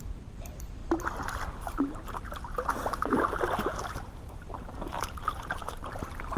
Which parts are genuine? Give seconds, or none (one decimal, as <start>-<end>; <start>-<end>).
0.8-4.6